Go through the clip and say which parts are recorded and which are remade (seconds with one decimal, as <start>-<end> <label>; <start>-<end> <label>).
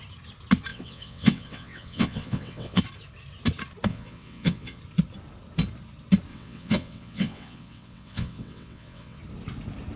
0.0-0.7 recorded; 0.7-2.8 remade; 2.8-3.9 recorded; 3.9-4.8 remade; 4.8-6.3 recorded; 6.3-9.2 remade; 9.2-10.0 recorded